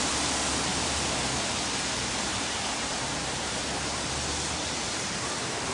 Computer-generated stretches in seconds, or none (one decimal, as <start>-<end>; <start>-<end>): 0.7-3.6; 4.6-5.7